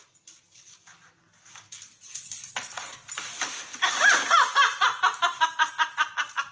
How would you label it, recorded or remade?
recorded